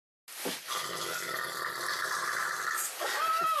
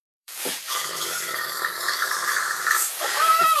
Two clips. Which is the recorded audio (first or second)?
first